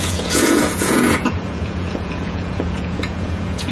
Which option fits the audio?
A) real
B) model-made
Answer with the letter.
B